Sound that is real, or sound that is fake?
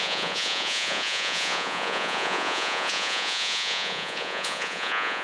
fake